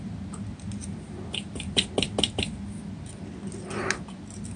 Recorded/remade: recorded